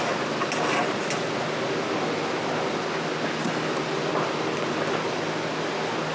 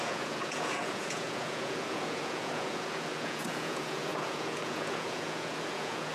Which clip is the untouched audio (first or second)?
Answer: first